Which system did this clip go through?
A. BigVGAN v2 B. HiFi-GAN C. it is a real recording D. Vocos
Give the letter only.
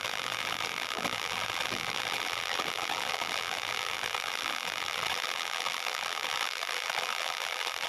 A